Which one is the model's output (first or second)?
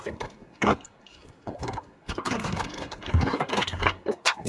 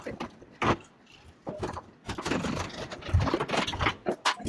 first